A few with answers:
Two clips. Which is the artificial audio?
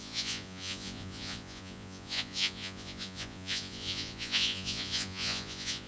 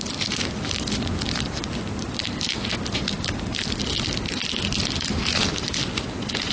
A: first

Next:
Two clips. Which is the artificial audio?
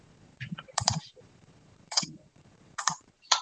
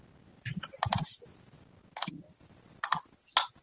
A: first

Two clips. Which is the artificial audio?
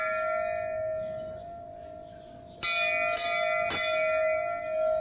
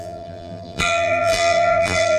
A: second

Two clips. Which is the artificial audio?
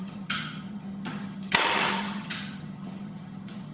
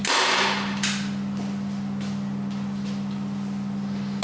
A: first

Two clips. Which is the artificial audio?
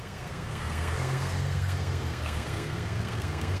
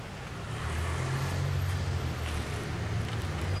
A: first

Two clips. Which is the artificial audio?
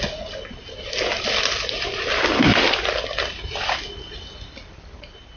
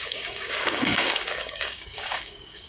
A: second